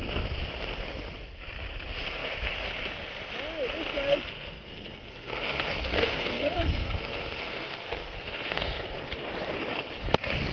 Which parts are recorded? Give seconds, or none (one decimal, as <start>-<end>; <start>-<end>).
0.0-4.1; 9.1-10.5